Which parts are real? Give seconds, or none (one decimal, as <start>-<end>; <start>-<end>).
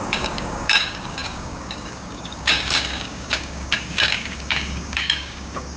none